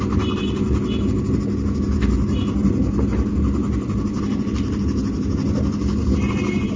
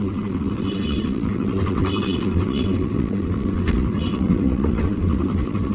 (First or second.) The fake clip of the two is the second